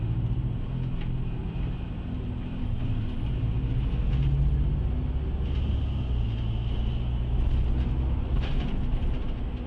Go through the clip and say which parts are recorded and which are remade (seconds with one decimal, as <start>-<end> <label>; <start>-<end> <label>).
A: 0.0-1.4 recorded; 1.4-3.0 remade; 3.0-9.7 recorded